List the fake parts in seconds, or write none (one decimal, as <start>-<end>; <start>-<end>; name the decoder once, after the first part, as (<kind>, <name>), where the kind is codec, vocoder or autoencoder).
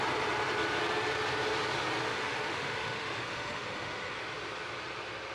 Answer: 2.1-4.2 (autoencoder, DAC-VAE)